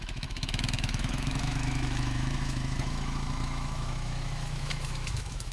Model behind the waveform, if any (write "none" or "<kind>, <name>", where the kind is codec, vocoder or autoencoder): autoencoder, DAC-VAE